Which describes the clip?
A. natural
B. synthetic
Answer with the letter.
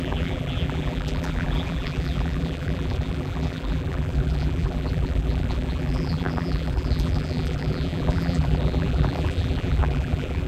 B